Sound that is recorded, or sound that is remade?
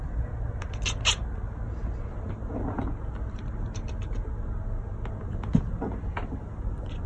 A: recorded